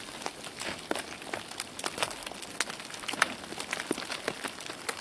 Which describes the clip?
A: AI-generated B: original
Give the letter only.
B